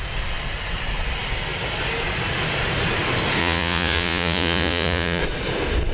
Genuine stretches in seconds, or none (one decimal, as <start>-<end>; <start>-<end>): 0.0-3.4; 5.2-5.9